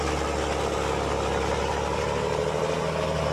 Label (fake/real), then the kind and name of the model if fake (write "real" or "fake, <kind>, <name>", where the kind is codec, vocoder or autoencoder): real